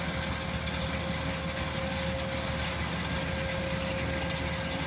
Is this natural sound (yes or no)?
yes